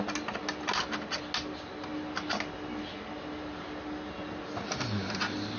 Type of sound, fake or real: real